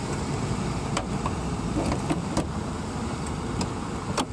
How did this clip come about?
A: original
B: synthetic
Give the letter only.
A